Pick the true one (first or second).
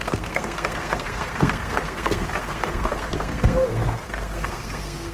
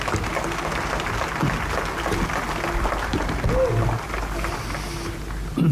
second